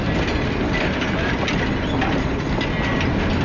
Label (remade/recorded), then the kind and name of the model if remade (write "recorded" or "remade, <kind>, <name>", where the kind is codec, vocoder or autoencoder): recorded